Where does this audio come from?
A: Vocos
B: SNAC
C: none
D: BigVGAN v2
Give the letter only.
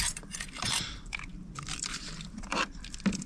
D